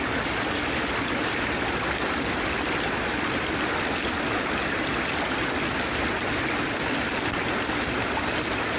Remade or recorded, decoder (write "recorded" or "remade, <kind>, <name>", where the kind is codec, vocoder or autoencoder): recorded